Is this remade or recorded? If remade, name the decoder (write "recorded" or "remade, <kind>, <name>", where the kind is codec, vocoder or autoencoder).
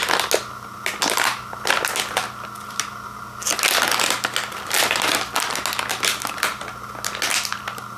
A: recorded